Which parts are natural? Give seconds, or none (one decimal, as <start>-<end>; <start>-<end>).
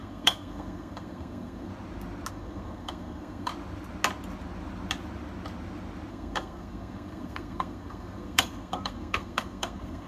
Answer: 1.7-2.3; 3.5-6.1